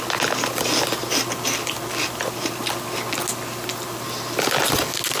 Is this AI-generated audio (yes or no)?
no